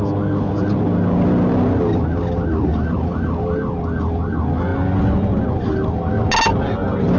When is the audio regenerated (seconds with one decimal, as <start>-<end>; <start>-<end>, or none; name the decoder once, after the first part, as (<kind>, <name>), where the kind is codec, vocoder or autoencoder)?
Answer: 2.7-3.4 (vocoder, BigVGAN v2)